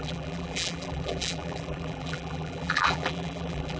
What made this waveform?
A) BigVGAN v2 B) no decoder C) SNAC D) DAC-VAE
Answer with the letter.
A